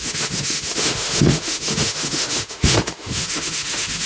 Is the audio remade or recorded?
remade